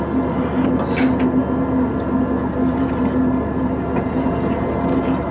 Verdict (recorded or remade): recorded